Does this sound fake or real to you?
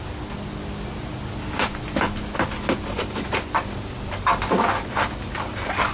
real